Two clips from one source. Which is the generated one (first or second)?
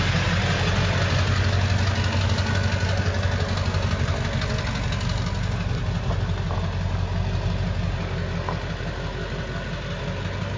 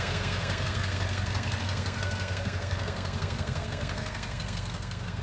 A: second